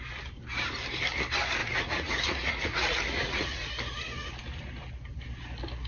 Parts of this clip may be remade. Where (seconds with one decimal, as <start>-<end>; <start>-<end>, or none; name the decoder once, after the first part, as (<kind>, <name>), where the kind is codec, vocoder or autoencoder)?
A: 1.6-3.7 (vocoder, Vocos)